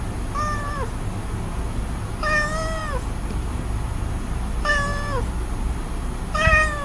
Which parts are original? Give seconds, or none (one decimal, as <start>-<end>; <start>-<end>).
0.0-6.8